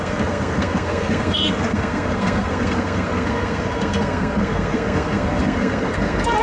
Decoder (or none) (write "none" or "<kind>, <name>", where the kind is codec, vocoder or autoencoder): codec, SNAC